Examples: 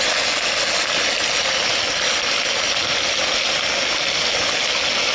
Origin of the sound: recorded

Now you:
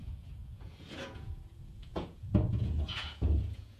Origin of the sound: remade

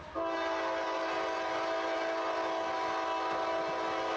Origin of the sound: recorded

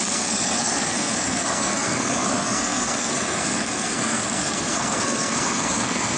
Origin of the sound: remade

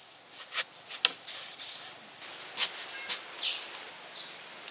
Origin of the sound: recorded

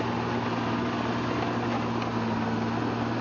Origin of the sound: recorded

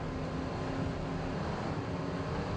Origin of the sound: recorded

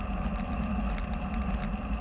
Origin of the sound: recorded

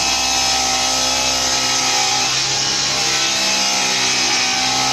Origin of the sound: recorded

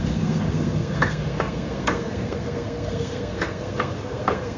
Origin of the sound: remade